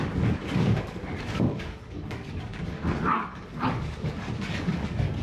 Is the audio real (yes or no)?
no